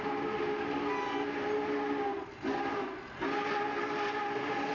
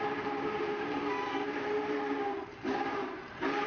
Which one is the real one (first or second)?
first